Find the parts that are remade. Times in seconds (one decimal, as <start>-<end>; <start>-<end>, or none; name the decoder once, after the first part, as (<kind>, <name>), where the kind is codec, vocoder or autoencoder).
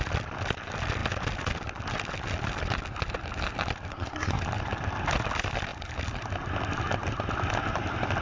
3.9-4.4 (codec, SNAC)